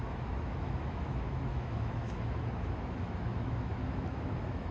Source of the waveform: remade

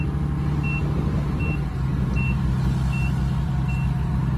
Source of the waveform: recorded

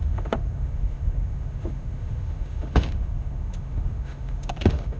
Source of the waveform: remade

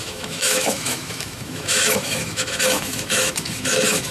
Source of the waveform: remade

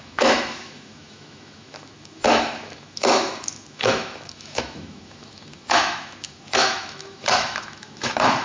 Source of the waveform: remade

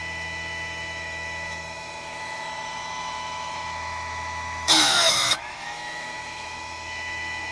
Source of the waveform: remade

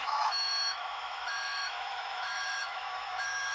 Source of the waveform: remade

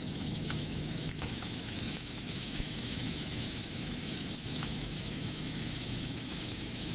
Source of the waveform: remade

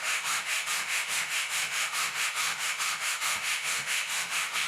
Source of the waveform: remade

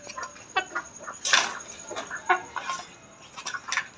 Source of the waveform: recorded